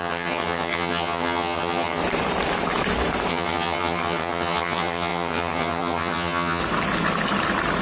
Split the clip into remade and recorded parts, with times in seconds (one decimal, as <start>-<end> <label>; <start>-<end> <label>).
0.0-2.0 remade; 2.0-3.3 recorded; 3.3-6.6 remade; 6.6-7.8 recorded